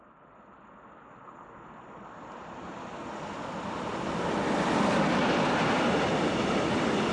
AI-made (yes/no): no